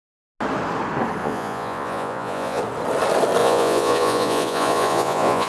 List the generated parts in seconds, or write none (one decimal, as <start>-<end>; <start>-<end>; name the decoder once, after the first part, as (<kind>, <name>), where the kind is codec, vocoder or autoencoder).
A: 1.2-2.6 (vocoder, Vocos); 3.4-5.5

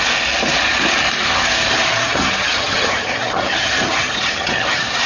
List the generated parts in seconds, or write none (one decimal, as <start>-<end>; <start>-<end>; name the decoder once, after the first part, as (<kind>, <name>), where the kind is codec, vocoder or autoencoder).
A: 1.9-5.1 (vocoder, HiFi-GAN)

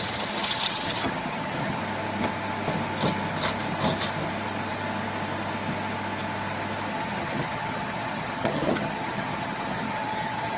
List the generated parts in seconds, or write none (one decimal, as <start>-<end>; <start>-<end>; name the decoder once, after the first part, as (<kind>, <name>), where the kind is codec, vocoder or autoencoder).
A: 0.0-1.8 (vocoder, HiFi-GAN); 6.9-10.6

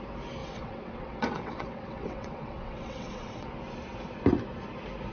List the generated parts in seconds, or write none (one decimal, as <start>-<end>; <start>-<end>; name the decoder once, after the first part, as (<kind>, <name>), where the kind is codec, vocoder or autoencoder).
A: 0.4-3.5 (vocoder, WaveNeXt)

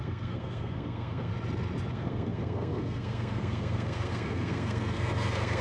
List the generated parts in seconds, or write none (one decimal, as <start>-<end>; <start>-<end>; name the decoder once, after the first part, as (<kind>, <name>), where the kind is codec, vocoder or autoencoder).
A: 0.0-1.3 (codec, SNAC); 1.9-5.6

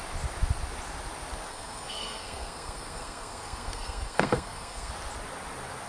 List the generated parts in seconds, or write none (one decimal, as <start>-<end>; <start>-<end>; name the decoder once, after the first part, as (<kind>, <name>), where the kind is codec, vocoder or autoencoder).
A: 1.5-4.9 (codec, SNAC)

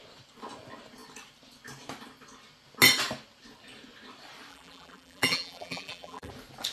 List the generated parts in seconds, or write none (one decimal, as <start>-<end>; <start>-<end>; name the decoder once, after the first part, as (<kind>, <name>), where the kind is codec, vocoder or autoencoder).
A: 4.5-6.3 (vocoder, BigVGAN v2)

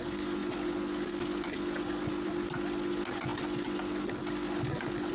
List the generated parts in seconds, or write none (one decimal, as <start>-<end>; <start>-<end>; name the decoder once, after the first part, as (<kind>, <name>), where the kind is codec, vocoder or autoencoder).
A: none